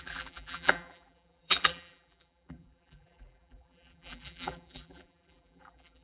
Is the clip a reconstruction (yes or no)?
yes